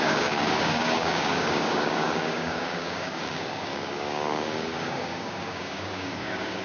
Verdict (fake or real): fake